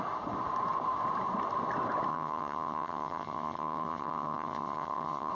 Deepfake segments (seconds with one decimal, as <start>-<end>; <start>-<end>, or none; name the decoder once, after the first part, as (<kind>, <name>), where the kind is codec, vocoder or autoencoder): 2.1-5.3 (vocoder, HiFi-GAN)